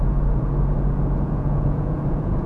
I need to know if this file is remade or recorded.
remade